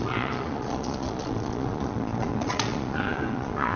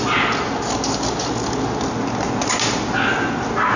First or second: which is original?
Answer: second